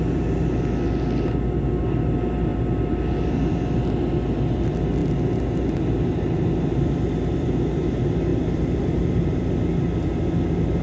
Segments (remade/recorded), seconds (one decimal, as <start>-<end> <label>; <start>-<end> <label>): 0.0-8.3 recorded; 8.3-9.6 remade; 9.6-10.8 recorded